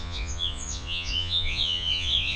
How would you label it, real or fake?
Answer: fake